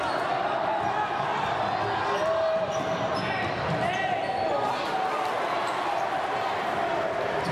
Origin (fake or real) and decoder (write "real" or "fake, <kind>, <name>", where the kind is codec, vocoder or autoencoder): real